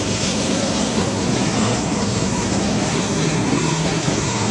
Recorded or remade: remade